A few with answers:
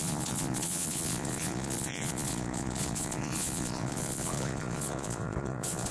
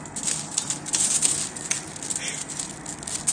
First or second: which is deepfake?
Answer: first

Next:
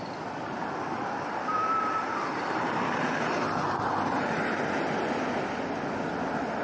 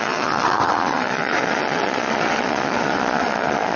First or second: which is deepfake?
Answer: second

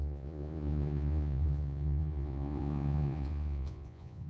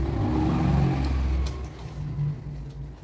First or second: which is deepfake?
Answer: first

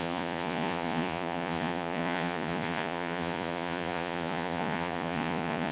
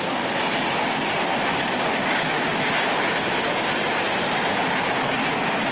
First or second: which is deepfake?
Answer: first